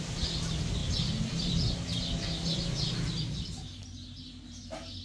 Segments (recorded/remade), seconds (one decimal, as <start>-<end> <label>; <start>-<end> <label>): 0.0-5.0 recorded